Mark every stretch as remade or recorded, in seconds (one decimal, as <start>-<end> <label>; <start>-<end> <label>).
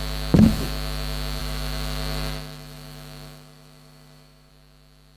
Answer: 0.0-1.4 recorded; 1.4-4.5 remade; 4.5-5.2 recorded